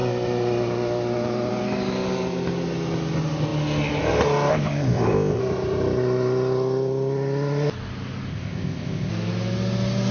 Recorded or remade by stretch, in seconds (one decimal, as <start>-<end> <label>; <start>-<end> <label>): 0.0-4.5 recorded; 4.5-5.4 remade; 5.4-8.3 recorded; 8.3-9.1 remade; 9.1-10.1 recorded

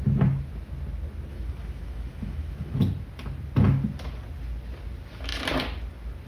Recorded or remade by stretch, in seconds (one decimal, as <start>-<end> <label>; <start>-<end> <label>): 0.0-1.3 recorded; 1.3-2.8 remade; 2.8-6.3 recorded

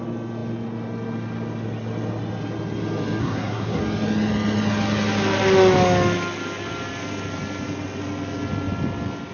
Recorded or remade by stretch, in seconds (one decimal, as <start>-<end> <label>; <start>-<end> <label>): 0.0-3.2 recorded; 3.2-3.8 remade; 3.8-9.3 recorded

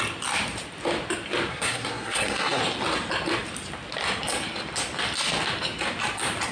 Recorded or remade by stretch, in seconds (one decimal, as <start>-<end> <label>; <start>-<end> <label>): 0.0-1.5 recorded; 1.5-2.6 remade; 2.6-6.5 recorded

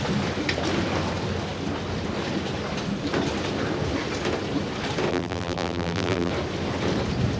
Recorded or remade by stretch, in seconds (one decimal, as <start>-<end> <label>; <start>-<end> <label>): 0.0-5.1 recorded; 5.1-6.3 remade; 6.3-7.4 recorded

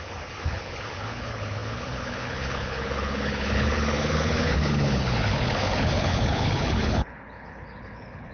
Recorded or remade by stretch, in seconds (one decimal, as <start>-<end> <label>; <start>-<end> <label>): 0.0-8.3 remade

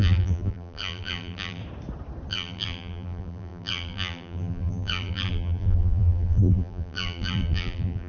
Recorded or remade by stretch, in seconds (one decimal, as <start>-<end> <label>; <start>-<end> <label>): 0.0-1.6 remade; 1.6-2.3 recorded; 2.3-8.1 remade

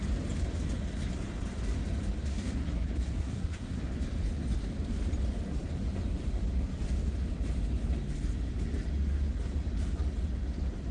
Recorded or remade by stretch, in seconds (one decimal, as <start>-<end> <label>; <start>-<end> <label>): 0.0-2.3 recorded; 2.3-3.8 remade; 3.8-10.9 recorded